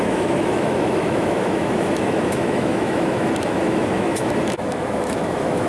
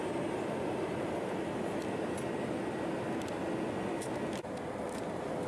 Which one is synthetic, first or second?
first